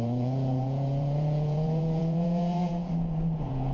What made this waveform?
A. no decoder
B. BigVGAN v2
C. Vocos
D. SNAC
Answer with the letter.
C